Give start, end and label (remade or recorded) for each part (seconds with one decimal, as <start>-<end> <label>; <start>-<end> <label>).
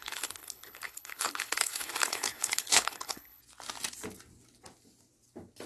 0.0-3.4 remade; 3.4-5.7 recorded